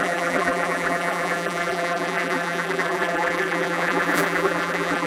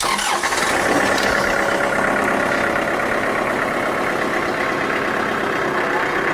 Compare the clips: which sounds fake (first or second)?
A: first